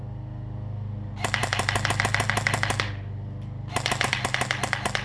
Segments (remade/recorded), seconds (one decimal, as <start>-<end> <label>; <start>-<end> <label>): 0.0-5.0 recorded